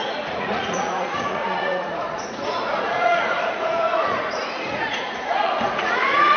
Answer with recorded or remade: remade